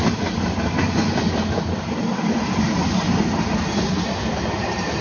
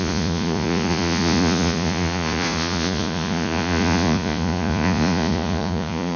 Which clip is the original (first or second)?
first